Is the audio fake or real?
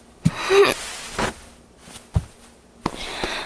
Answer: real